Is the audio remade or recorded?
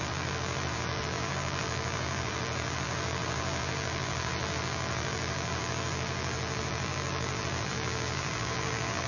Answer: remade